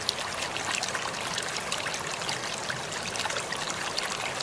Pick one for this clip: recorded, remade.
recorded